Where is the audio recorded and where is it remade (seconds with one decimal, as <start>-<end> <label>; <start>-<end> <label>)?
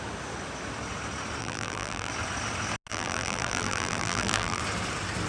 0.0-1.4 recorded; 1.4-2.1 remade; 2.1-2.9 recorded; 2.9-4.6 remade; 4.6-5.3 recorded